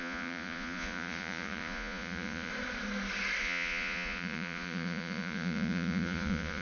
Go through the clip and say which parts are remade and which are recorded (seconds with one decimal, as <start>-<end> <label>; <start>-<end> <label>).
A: 0.0-2.5 remade; 2.5-3.4 recorded; 3.4-6.6 remade